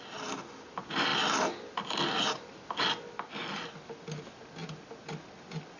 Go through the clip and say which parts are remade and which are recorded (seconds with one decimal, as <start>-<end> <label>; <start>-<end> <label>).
0.0-5.8 recorded